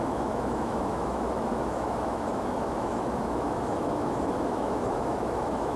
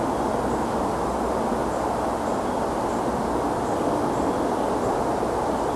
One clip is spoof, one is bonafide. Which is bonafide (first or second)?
second